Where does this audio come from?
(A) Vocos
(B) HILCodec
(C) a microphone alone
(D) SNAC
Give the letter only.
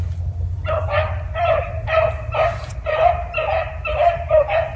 C